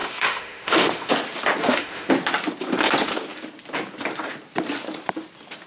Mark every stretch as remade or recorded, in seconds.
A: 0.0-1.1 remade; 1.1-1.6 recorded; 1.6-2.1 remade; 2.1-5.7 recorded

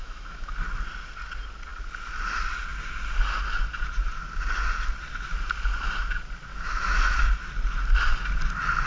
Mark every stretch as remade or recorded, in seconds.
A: 0.0-0.5 remade; 0.5-6.5 recorded; 6.5-7.2 remade; 7.2-8.9 recorded